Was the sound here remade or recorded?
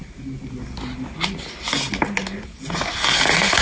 recorded